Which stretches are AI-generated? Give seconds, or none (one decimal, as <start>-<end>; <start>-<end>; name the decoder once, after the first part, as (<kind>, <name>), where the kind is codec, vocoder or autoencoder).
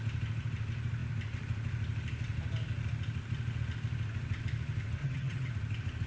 5.0-5.5 (vocoder, HiFi-GAN)